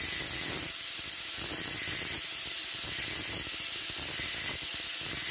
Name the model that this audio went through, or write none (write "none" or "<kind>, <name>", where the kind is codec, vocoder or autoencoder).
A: none